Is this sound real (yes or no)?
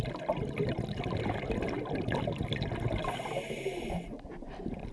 yes